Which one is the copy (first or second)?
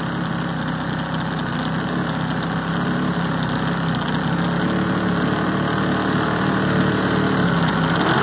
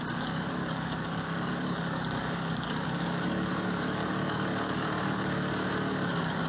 second